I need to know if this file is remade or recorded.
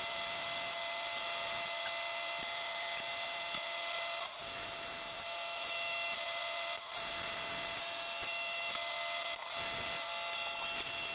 recorded